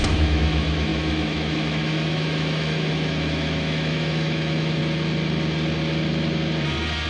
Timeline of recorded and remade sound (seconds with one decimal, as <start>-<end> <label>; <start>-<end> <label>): 0.0-4.8 remade; 4.8-7.1 recorded